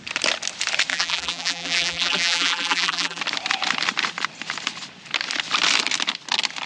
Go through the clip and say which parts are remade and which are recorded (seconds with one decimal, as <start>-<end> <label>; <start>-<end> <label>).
0.0-0.9 recorded; 0.9-3.2 remade; 3.2-6.7 recorded